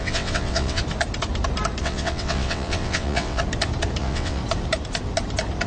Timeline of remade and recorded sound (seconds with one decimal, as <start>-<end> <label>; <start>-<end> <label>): 0.0-0.8 remade; 0.8-1.8 recorded; 1.8-3.4 remade; 3.4-4.0 recorded; 4.0-4.4 remade; 4.4-5.7 recorded